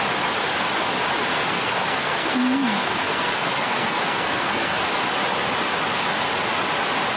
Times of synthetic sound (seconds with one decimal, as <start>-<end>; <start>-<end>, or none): 1.3-4.8